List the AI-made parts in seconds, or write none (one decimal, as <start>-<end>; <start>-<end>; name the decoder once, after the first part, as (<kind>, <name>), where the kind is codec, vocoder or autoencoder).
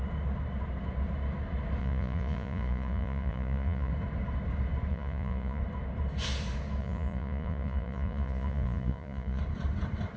1.8-3.9 (vocoder, Vocos); 4.9-5.6; 6.8-9.4